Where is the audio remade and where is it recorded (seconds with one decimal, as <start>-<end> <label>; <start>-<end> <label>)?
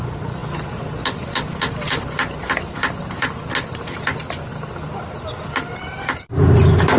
0.0-7.0 recorded